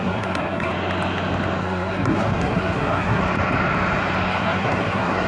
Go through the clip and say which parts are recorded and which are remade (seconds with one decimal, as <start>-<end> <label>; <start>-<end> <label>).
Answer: 0.0-0.7 remade; 0.7-1.6 recorded; 1.6-3.2 remade; 3.2-4.3 recorded; 4.3-5.3 remade